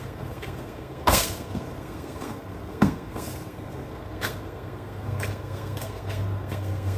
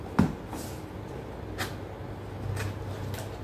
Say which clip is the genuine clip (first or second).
second